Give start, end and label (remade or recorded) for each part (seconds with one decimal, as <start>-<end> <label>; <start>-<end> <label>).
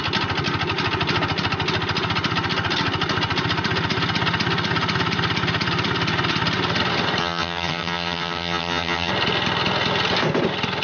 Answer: 0.0-7.2 recorded; 7.2-9.1 remade; 9.1-10.8 recorded